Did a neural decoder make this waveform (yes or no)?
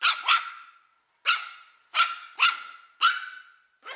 no